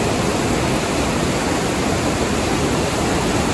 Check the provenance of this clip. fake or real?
real